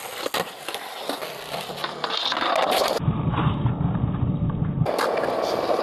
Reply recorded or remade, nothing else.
recorded